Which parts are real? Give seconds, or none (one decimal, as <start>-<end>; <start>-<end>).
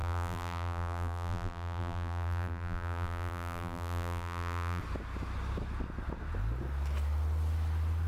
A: 4.8-8.1